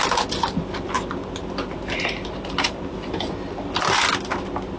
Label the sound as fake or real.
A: real